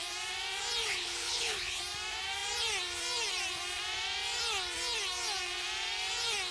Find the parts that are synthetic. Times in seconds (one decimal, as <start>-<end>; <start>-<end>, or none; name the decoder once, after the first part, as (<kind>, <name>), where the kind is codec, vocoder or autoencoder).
0.8-1.8 (codec, HILCodec)